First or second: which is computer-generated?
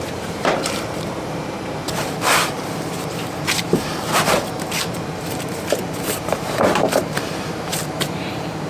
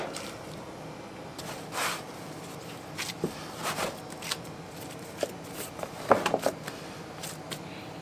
first